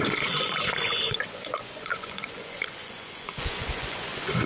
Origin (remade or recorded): remade